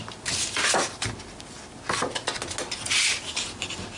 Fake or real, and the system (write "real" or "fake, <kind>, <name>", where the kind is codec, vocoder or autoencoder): real